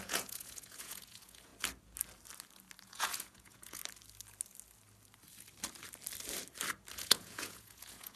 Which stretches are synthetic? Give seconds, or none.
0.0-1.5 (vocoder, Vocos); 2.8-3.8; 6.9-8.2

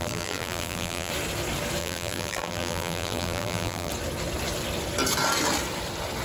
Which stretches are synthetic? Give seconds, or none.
0.0-1.1 (vocoder, BigVGAN v2); 1.8-3.9

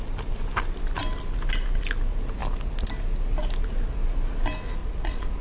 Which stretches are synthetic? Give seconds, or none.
4.8-5.4 (vocoder, Vocos)

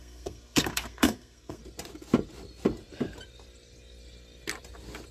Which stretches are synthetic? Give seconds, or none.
0.0-1.6 (codec, SNAC)

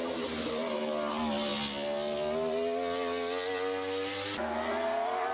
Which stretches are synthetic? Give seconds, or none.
none

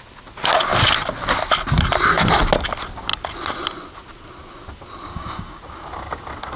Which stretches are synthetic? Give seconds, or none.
5.1-5.6 (codec, DAC)

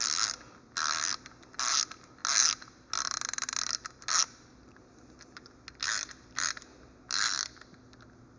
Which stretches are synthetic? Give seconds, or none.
none

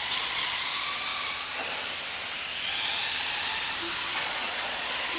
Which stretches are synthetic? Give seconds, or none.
0.0-1.1 (vocoder, Vocos); 4.2-5.2